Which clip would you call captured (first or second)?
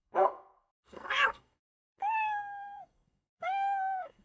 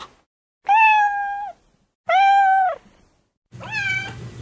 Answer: second